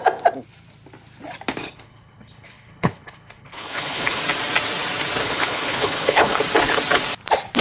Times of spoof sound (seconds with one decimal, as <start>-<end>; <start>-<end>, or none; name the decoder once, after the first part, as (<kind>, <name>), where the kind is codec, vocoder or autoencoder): 1.6-4.2 (codec, HILCodec); 5.2-6.4